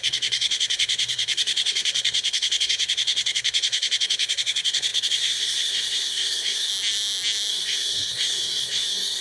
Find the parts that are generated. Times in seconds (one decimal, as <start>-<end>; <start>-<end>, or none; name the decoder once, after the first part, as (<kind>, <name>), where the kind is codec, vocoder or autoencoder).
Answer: 0.0-6.7 (codec, SNAC); 7.5-9.2